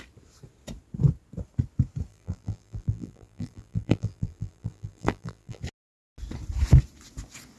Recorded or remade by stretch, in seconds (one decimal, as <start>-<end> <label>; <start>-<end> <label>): 0.0-2.1 recorded; 2.1-5.6 remade; 5.6-7.6 recorded